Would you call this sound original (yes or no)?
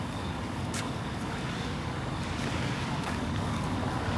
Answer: no